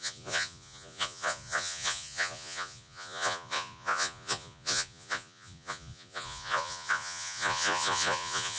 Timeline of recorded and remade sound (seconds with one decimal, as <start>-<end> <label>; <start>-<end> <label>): 0.0-8.6 remade